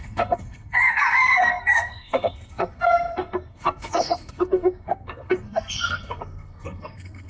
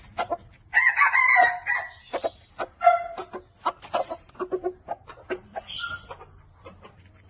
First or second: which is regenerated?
first